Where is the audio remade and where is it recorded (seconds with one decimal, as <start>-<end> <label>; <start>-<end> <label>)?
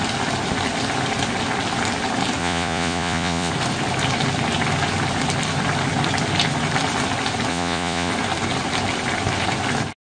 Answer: 0.0-2.4 recorded; 2.4-3.5 remade; 3.5-7.5 recorded; 7.5-8.1 remade; 8.1-10.2 recorded